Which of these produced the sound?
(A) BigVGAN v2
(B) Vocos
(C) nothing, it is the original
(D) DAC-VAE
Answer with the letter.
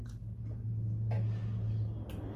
C